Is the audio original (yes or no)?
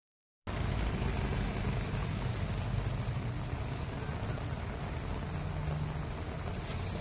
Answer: yes